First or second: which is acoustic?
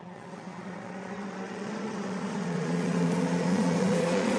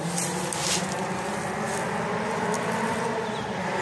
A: second